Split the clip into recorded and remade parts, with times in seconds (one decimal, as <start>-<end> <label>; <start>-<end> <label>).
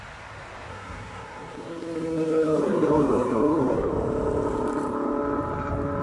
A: 0.0-0.7 recorded; 0.7-3.9 remade; 3.9-6.0 recorded